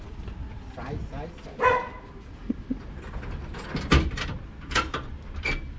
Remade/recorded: recorded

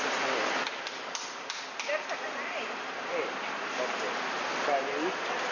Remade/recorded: recorded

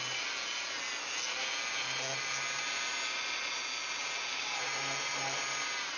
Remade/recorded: recorded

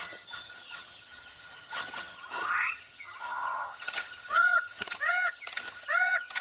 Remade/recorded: remade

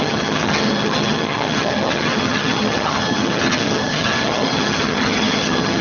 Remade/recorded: remade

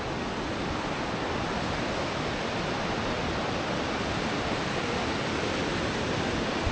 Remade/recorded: recorded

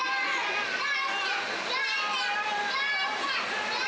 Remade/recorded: recorded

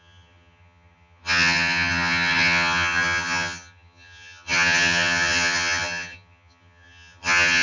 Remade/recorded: remade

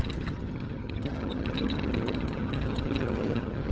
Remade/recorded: remade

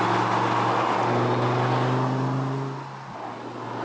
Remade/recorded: recorded